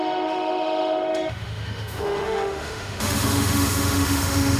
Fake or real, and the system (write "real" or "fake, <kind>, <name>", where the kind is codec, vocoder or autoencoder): fake, autoencoder, DAC-VAE